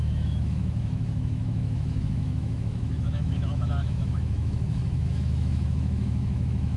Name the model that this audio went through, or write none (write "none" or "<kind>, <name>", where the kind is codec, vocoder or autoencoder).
autoencoder, DAC-VAE